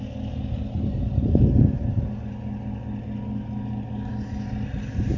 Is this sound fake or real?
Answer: real